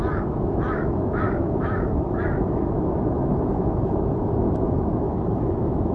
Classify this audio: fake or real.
fake